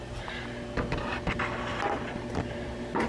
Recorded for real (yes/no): yes